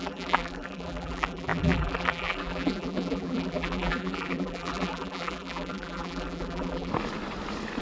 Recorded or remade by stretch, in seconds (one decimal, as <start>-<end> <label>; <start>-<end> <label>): 0.0-6.9 remade; 6.9-7.8 recorded